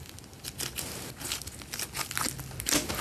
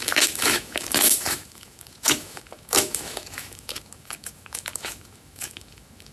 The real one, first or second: first